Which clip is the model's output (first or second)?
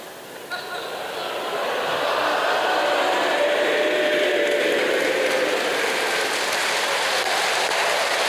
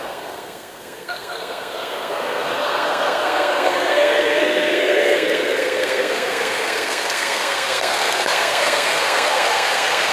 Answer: second